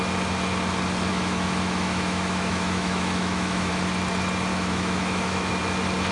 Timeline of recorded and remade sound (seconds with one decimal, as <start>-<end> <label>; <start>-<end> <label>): 0.0-1.1 recorded; 1.1-3.7 remade; 3.7-4.5 recorded; 4.5-5.5 remade; 5.5-6.1 recorded